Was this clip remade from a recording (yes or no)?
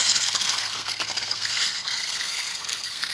yes